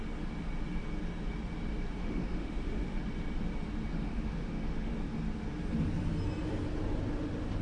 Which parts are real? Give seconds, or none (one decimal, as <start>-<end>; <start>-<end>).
0.0-2.0; 3.0-3.9; 4.9-7.6